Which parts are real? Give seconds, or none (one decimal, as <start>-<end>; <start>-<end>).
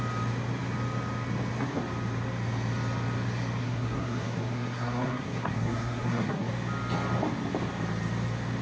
0.0-3.6; 6.5-8.6